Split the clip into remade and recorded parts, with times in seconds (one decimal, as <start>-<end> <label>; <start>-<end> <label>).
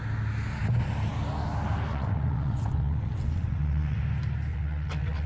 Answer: 0.0-1.9 recorded; 1.9-4.0 remade; 4.0-4.5 recorded; 4.5-5.3 remade